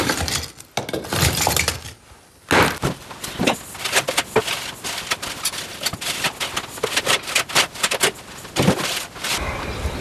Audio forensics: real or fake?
real